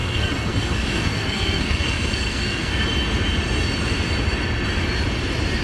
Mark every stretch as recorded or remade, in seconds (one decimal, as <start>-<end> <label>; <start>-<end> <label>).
0.0-2.8 remade; 2.8-5.6 recorded

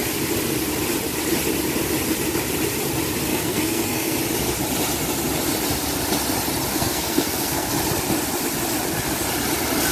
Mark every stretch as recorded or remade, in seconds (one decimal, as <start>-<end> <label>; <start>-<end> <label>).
0.0-3.3 recorded; 3.3-4.2 remade; 4.2-6.7 recorded; 6.7-7.7 remade; 7.7-9.9 recorded